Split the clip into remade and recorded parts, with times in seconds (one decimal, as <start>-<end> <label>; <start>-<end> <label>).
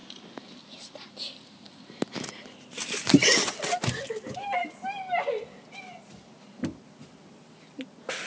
0.0-8.3 recorded